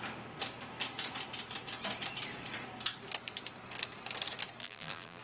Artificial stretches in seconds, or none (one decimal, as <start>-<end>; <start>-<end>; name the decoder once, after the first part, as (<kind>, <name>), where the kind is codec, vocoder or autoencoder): 4.6-5.2 (vocoder, BigVGAN v2)